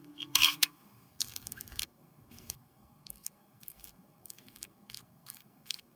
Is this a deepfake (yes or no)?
yes